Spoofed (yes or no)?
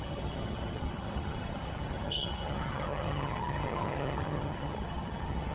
yes